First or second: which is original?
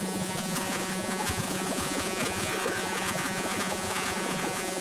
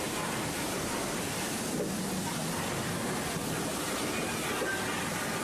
second